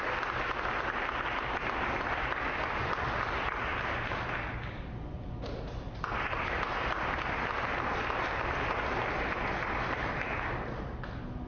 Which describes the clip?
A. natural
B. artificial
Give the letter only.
A